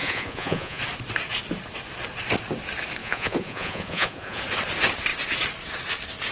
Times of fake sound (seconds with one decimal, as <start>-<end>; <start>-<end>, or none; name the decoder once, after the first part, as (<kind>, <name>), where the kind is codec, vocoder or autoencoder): 0.0-0.8 (vocoder, Vocos); 3.0-4.4